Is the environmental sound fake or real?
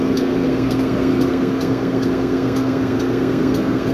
fake